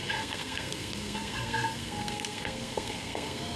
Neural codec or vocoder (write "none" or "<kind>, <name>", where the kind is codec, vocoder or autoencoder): codec, SNAC